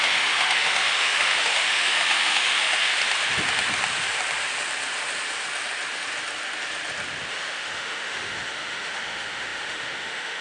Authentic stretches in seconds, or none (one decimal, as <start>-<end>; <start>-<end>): 2.9-7.3